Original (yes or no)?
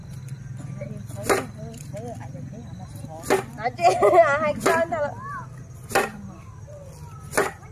yes